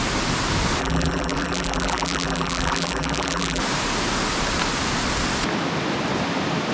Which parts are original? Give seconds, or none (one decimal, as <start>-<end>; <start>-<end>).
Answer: 0.0-0.8; 3.6-6.7